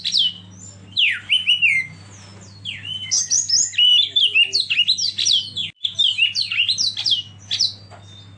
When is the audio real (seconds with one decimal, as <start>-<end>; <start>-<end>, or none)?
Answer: 0.0-8.4